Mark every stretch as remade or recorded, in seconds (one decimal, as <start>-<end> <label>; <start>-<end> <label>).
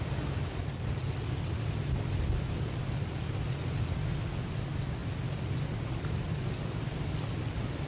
0.0-7.9 recorded